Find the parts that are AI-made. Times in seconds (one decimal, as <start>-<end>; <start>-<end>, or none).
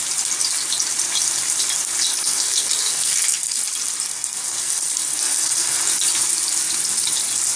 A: 2.1-3.6; 4.1-5.8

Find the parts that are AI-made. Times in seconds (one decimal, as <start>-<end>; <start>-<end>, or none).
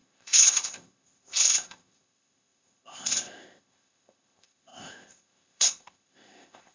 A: 0.0-6.7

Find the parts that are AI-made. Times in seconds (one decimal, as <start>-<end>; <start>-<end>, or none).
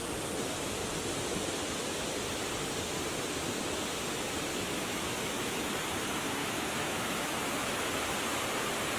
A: 4.5-5.5; 6.4-7.4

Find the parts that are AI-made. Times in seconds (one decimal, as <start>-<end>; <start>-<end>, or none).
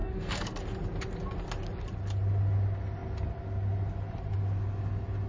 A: 0.0-0.6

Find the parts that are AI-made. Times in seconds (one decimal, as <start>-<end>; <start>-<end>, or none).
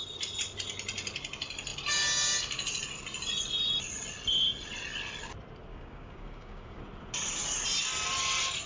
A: 5.7-6.8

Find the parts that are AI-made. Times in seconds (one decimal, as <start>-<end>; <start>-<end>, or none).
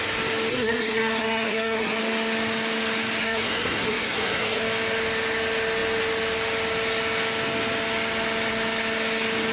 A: 0.5-2.0; 3.2-4.6